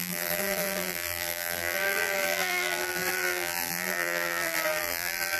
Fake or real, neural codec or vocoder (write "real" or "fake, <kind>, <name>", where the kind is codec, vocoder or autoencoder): fake, vocoder, BigVGAN v2